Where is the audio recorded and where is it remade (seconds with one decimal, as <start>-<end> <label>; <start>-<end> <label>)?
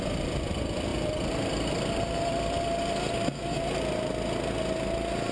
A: 0.0-5.3 recorded